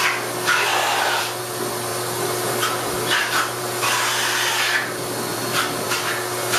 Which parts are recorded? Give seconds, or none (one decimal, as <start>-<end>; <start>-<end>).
0.0-0.7; 1.4-5.3; 6.1-6.6